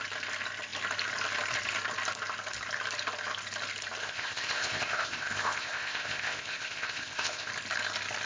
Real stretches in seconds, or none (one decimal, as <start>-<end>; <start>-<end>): 0.0-4.0; 7.5-8.3